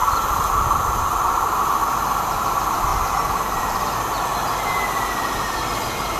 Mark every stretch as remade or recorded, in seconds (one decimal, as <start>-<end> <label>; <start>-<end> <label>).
0.0-1.8 remade; 1.8-6.2 recorded